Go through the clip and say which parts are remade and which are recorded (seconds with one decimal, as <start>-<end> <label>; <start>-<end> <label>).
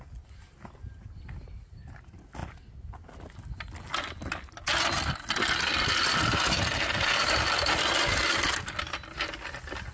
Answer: 0.0-9.9 recorded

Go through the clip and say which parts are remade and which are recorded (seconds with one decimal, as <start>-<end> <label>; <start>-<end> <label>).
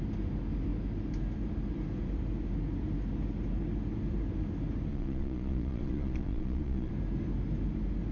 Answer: 0.0-4.9 recorded; 4.9-6.9 remade; 6.9-8.1 recorded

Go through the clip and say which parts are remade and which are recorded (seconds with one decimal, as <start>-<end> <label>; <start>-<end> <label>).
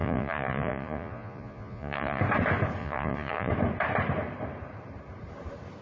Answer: 0.0-2.2 remade; 2.2-2.8 recorded; 2.8-3.5 remade; 3.5-5.8 recorded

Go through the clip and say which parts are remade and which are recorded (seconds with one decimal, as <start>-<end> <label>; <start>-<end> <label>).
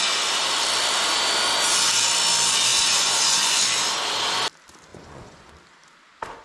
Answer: 0.0-2.7 recorded; 2.7-3.6 remade; 3.6-4.9 recorded; 4.9-5.5 remade; 5.5-6.4 recorded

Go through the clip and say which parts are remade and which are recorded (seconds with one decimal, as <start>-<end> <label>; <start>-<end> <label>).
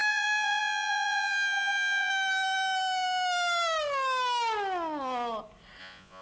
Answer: 0.0-2.1 remade; 2.1-5.8 recorded; 5.8-6.2 remade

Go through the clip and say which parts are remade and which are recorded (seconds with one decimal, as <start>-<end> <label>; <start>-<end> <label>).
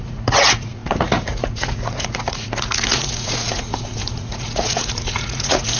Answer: 0.0-5.8 remade